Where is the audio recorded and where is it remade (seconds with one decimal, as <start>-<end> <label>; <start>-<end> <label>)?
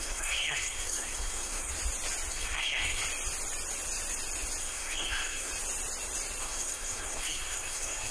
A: 0.0-1.7 remade; 1.7-2.3 recorded; 2.3-3.0 remade; 3.0-4.6 recorded; 4.6-5.5 remade; 5.5-6.4 recorded; 6.4-8.1 remade